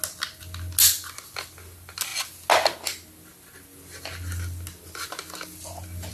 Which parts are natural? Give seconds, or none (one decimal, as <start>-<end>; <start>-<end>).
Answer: 0.0-6.1